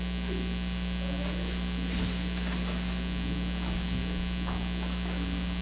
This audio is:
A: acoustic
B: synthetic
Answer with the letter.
A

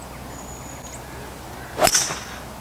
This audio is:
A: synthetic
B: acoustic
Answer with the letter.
B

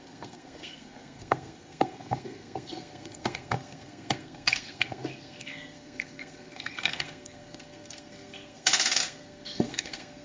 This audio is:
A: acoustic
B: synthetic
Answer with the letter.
B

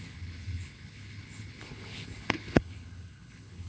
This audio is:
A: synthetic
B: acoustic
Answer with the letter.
A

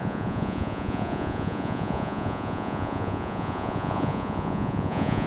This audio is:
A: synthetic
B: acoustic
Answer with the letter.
A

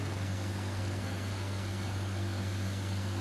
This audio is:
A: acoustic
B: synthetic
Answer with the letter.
B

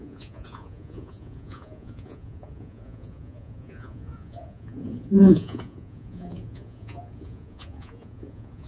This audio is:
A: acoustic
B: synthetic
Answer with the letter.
B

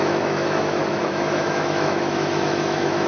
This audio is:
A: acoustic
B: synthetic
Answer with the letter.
B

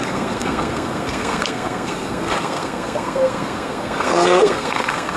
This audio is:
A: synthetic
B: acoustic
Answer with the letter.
A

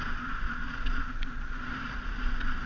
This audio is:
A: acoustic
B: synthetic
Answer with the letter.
B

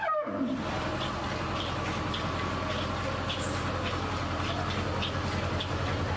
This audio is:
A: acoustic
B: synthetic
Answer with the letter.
A